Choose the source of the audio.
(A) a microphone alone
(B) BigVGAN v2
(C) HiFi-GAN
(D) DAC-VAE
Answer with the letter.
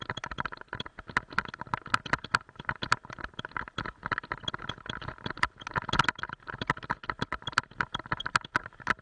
A